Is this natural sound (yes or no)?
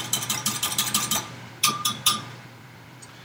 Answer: no